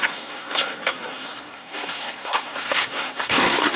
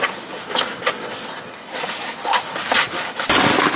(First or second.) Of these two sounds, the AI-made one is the first